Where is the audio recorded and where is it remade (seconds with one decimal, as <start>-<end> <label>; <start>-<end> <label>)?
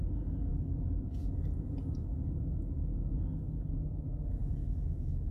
0.0-0.5 recorded; 0.5-1.2 remade; 1.2-4.4 recorded; 4.4-5.3 remade